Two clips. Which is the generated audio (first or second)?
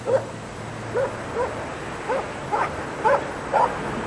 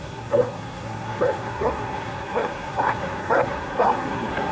second